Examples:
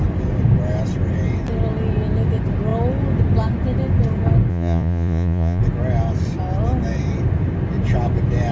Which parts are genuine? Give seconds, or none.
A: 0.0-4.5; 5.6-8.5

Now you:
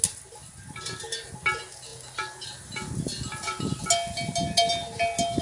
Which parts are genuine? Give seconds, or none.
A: 0.0-5.4

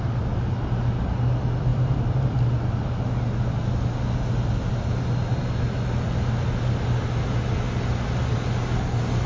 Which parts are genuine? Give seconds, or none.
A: 0.0-9.3

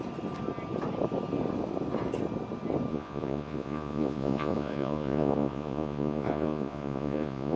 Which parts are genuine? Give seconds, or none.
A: 0.0-2.9

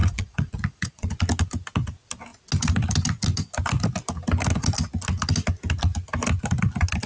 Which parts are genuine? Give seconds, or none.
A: 1.1-7.1

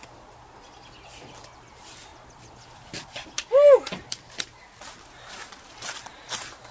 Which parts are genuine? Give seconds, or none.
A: 0.0-6.7

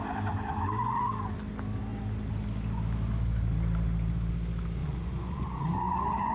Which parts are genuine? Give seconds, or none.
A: 0.0-4.8